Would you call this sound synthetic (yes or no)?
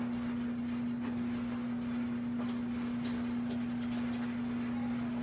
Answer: no